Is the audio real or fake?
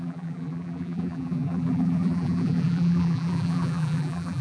fake